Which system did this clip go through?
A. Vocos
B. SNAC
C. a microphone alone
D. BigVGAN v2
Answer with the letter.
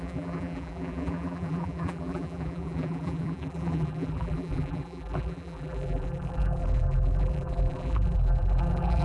D